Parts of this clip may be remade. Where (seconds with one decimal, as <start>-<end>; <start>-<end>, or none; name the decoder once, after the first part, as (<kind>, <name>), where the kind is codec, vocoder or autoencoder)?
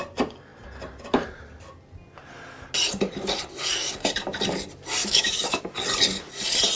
5.0-5.6 (autoencoder, DAC-VAE)